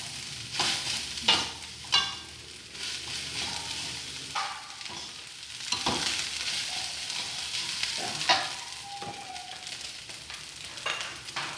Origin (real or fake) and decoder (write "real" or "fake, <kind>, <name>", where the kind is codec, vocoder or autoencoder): real